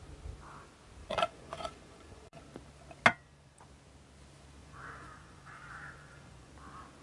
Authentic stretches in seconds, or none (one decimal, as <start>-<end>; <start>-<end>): 0.0-1.0; 2.4-3.1; 3.6-4.6; 6.5-7.0